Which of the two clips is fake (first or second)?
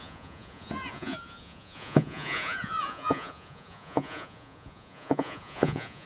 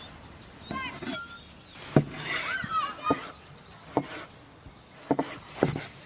first